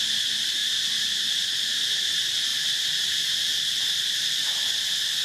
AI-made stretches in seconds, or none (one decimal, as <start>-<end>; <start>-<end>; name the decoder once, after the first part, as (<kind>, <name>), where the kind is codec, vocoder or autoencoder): 0.0-5.2 (vocoder, BigVGAN v2)